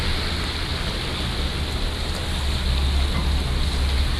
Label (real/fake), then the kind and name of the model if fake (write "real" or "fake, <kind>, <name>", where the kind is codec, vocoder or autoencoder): real